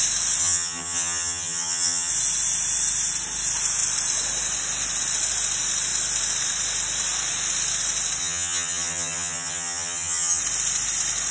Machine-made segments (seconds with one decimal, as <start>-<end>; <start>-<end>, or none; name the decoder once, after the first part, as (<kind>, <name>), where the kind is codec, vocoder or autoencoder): 0.4-2.1 (vocoder, HiFi-GAN); 8.2-10.4

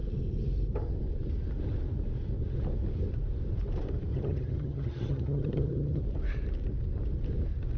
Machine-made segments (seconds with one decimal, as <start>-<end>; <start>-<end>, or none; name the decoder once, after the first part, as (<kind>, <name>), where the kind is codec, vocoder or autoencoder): 4.1-6.0 (vocoder, HiFi-GAN)

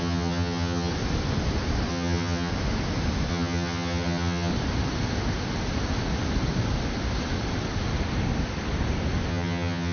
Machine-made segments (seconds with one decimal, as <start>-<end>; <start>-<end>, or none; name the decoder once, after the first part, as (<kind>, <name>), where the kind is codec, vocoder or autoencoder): 0.0-0.9 (vocoder, HiFi-GAN); 1.9-2.5; 3.3-4.5; 9.3-9.9

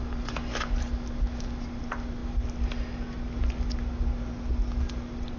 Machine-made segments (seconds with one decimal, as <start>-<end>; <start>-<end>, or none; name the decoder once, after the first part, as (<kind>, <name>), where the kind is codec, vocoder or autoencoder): none

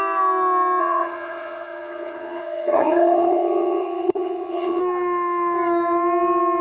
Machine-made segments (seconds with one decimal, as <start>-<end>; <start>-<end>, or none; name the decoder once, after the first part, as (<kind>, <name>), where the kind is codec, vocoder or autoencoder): 0.8-4.8 (vocoder, HiFi-GAN)